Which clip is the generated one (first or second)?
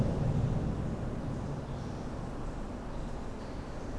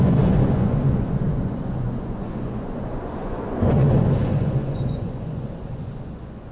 second